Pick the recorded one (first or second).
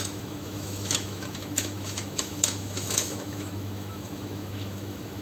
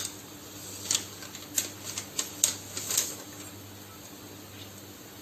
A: second